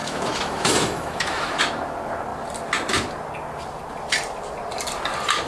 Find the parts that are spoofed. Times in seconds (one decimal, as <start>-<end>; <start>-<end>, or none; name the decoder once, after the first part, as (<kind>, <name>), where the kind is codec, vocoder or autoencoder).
0.0-1.6 (autoencoder, DAC-VAE)